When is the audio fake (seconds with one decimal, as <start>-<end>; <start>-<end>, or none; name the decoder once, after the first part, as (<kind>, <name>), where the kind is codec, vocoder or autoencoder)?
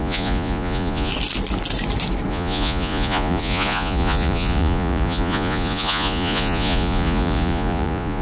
0.0-1.1 (vocoder, Vocos); 2.3-8.2